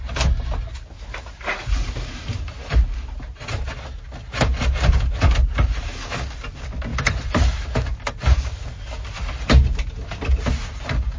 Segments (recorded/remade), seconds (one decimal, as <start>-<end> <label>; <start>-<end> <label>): 0.0-1.1 recorded; 1.1-3.4 remade; 3.4-6.9 recorded; 6.9-7.5 remade; 7.5-11.2 recorded